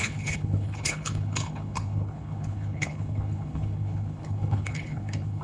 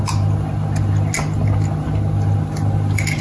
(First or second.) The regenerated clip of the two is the first